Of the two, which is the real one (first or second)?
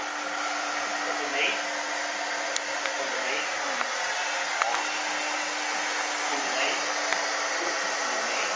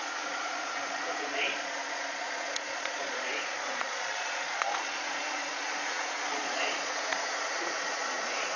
first